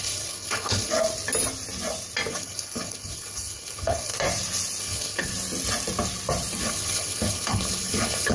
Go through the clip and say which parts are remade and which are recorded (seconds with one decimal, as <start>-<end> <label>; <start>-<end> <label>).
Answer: 0.0-0.9 remade; 0.9-2.3 recorded; 2.3-4.1 remade; 4.1-4.8 recorded; 4.8-5.3 remade; 5.3-6.6 recorded; 6.6-8.3 remade

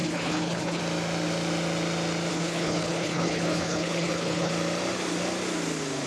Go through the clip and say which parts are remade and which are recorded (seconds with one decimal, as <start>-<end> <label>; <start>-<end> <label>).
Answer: 0.0-0.8 remade; 0.8-2.3 recorded; 2.3-4.5 remade; 4.5-6.1 recorded

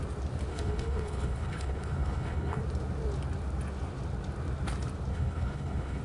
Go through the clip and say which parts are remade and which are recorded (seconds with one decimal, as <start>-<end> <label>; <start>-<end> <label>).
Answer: 0.0-0.5 recorded; 0.5-2.6 remade; 2.6-5.1 recorded; 5.1-6.0 remade